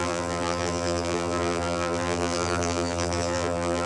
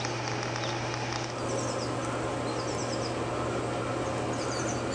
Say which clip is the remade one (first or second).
first